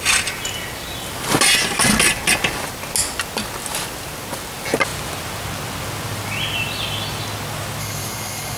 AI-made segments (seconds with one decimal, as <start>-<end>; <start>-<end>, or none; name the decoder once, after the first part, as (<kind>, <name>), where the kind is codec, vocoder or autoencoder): 7.8-8.6 (codec, DAC)